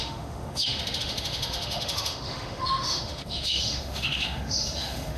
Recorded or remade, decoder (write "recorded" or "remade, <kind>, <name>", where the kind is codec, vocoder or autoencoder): remade, autoencoder, DAC-VAE